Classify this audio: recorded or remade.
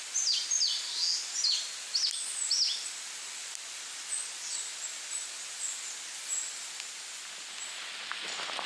recorded